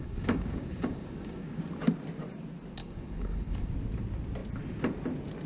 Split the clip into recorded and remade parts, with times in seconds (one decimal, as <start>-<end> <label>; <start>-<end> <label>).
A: 0.0-1.6 remade; 1.6-2.8 recorded; 2.8-3.7 remade; 3.7-5.5 recorded